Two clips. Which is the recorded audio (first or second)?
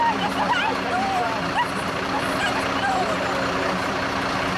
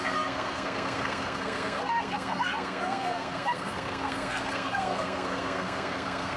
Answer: first